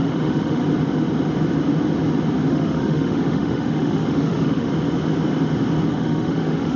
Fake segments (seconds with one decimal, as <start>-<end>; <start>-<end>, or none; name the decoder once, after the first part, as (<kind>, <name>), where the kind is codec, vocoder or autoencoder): 0.0-0.6 (autoencoder, DAC-VAE); 2.5-4.7; 5.9-6.8